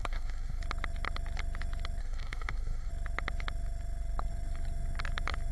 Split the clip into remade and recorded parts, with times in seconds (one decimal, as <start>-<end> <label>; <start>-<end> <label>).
0.0-0.6 remade; 0.6-2.0 recorded; 2.0-2.9 remade; 2.9-5.5 recorded